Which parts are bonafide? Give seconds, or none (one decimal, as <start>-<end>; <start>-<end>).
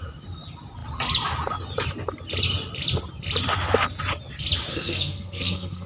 0.0-4.7